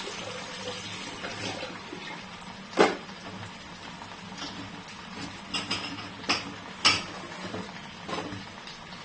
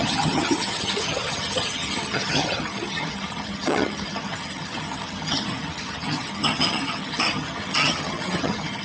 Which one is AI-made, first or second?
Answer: second